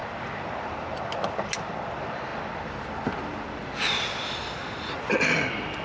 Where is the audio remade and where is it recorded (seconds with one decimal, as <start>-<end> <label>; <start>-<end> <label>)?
0.0-5.8 recorded